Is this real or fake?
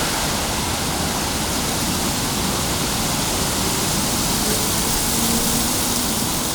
real